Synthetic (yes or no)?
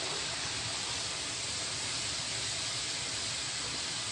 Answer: no